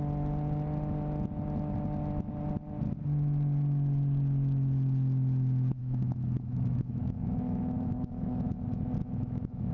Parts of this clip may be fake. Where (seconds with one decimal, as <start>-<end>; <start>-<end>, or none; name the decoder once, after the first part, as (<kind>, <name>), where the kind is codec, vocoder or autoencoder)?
5.8-8.5 (autoencoder, DAC-VAE); 9.0-9.7